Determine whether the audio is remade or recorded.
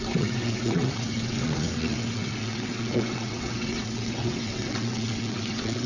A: remade